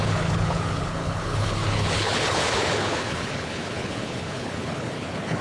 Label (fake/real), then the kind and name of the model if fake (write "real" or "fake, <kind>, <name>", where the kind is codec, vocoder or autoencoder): fake, codec, HILCodec